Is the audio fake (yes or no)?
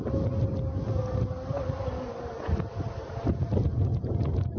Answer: no